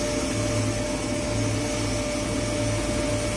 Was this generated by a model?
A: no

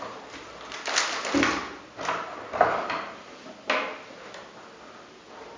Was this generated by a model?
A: no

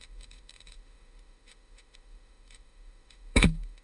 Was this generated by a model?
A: yes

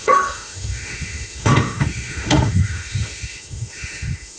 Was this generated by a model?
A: yes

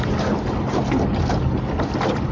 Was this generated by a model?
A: no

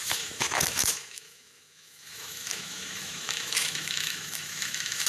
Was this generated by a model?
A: yes